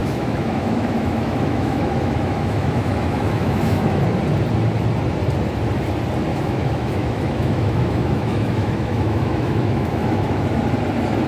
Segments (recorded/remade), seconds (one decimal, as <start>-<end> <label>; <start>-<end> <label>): 0.0-4.0 remade; 4.0-6.3 recorded; 6.3-10.4 remade; 10.4-11.3 recorded